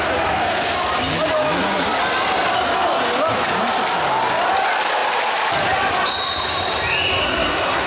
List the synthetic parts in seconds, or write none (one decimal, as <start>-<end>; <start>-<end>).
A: 7.2-7.9